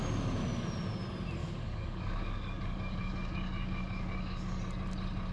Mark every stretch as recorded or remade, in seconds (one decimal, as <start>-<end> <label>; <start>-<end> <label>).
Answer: 0.0-1.4 recorded; 1.4-4.6 remade; 4.6-5.3 recorded

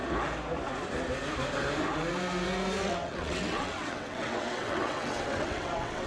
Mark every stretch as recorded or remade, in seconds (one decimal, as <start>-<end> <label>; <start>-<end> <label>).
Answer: 0.0-2.8 recorded; 2.8-6.1 remade

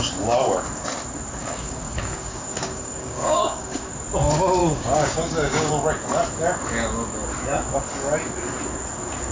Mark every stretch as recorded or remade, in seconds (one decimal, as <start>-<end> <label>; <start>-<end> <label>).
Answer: 0.0-1.4 recorded; 1.4-3.9 remade; 3.9-4.6 recorded; 4.6-5.7 remade; 5.7-9.3 recorded

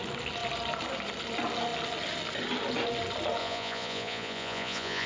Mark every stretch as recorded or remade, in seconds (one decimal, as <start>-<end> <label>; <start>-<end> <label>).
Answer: 0.0-3.4 recorded; 3.4-5.1 remade

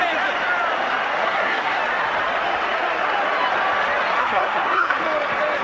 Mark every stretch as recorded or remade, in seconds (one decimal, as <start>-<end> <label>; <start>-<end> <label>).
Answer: 0.0-1.2 recorded; 1.2-1.8 remade; 1.8-4.2 recorded; 4.2-5.0 remade; 5.0-5.6 recorded

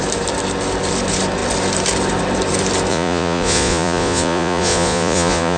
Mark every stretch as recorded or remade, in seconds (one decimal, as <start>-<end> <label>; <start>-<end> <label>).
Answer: 0.0-2.9 recorded; 2.9-5.6 remade

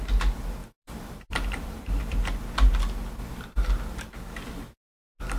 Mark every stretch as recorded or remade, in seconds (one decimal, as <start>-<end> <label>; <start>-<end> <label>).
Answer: 0.0-0.6 recorded; 0.6-2.0 remade; 2.0-5.4 recorded